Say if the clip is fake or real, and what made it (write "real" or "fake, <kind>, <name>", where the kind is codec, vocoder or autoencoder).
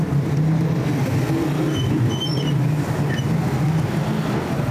real